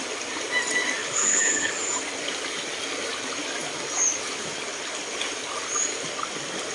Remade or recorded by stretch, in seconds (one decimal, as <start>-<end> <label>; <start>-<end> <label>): 0.0-1.0 recorded; 1.0-1.7 remade; 1.7-6.7 recorded